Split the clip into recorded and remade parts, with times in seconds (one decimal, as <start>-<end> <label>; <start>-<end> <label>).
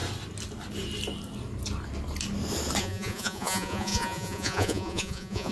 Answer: 0.0-2.8 recorded; 2.8-5.5 remade